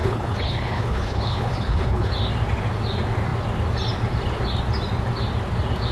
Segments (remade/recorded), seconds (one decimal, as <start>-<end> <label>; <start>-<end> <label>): 0.0-2.1 remade; 2.1-5.9 recorded